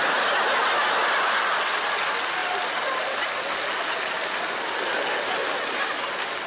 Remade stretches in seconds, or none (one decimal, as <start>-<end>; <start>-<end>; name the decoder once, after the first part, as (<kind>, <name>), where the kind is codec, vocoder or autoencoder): none